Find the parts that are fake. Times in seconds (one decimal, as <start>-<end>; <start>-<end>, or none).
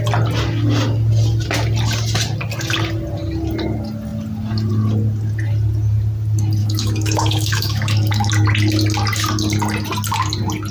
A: 6.6-8.3